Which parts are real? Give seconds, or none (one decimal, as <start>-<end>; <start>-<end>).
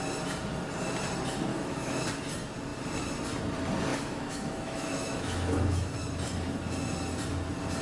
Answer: 0.0-1.5; 2.0-3.9; 6.0-7.8